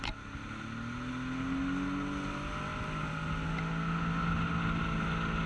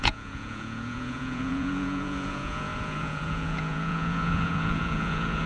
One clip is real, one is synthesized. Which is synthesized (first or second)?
second